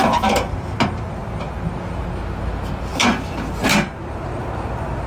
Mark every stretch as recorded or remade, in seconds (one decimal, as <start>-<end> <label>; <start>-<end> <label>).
0.0-5.1 recorded